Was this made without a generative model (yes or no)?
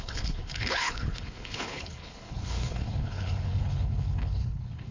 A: no